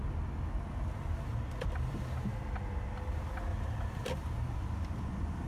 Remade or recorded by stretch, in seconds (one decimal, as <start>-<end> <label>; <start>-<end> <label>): 0.0-1.3 recorded; 1.3-2.6 remade; 2.6-3.5 recorded; 3.5-5.0 remade; 5.0-5.5 recorded